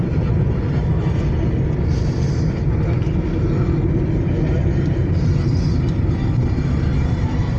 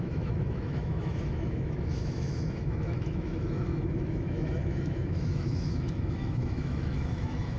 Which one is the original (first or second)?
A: first